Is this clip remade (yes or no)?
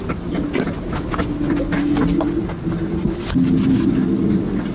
no